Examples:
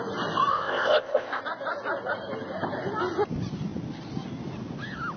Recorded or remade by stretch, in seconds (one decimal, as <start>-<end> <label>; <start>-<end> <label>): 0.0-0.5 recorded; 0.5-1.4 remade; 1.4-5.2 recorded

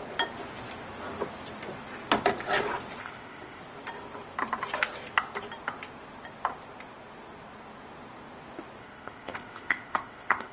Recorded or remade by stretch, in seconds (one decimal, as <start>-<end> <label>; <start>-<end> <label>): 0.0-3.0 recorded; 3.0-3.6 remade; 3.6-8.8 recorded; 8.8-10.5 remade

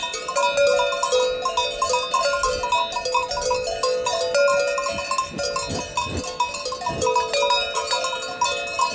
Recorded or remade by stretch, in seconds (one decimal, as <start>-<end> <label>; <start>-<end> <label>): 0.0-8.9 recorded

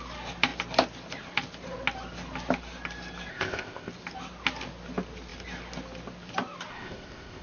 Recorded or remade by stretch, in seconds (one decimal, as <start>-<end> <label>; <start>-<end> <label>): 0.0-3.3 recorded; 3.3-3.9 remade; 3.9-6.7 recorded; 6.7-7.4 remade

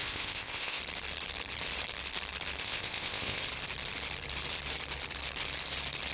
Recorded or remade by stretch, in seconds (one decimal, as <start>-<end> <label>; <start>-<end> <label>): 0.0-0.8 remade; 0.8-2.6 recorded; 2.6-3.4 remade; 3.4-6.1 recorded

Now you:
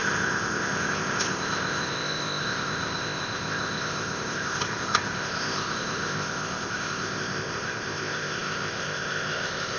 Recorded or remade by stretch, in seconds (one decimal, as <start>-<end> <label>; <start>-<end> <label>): 0.0-9.8 remade

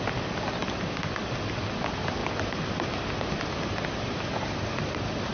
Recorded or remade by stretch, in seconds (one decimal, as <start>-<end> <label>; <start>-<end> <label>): 0.0-5.3 recorded